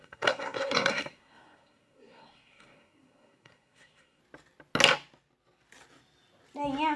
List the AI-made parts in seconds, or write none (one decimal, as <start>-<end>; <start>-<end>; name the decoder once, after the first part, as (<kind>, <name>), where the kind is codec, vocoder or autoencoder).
0.0-4.2 (codec, SNAC)